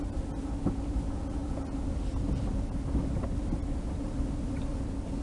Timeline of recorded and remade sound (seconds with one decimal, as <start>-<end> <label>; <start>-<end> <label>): 0.0-5.2 recorded